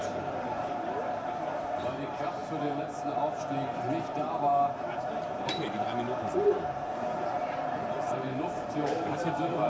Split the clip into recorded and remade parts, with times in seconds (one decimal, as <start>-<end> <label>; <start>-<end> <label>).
0.0-2.4 remade; 2.4-4.0 recorded; 4.0-9.7 remade

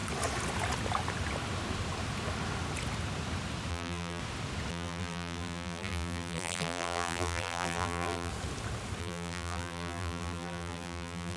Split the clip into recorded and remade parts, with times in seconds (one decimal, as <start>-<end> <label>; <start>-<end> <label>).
0.0-3.7 recorded; 3.7-4.2 remade; 4.2-4.7 recorded; 4.7-8.3 remade; 8.3-9.0 recorded; 9.0-11.4 remade

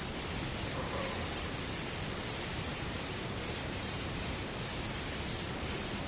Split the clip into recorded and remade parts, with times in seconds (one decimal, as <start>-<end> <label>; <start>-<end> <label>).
0.0-2.7 recorded; 2.7-4.4 remade; 4.4-6.1 recorded